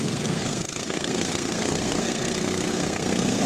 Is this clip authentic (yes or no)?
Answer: no